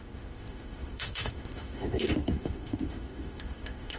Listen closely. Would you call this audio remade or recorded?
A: remade